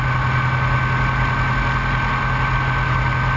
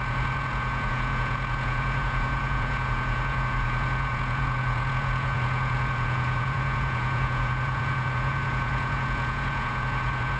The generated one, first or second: second